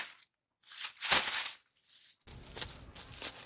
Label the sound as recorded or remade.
recorded